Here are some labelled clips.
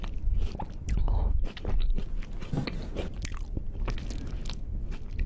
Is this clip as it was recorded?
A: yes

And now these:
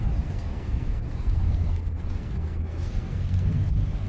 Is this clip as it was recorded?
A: no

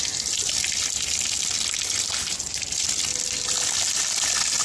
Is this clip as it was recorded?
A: yes